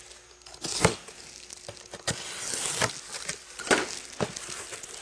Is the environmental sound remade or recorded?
recorded